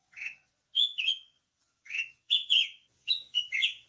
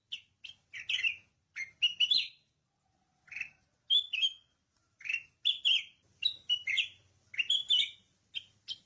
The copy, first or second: first